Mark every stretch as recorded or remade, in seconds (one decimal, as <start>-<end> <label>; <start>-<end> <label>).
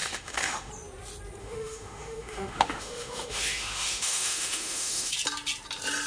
0.0-0.7 remade; 0.7-1.4 recorded; 1.4-5.1 remade; 5.1-6.1 recorded